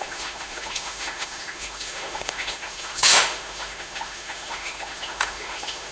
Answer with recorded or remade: remade